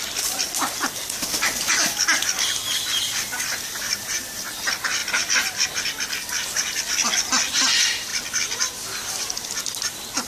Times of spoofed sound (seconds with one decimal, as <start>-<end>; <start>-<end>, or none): none